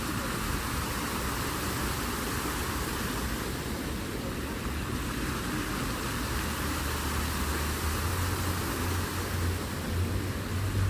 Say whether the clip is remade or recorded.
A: recorded